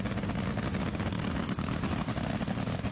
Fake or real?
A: real